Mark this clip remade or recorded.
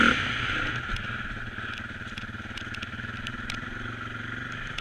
recorded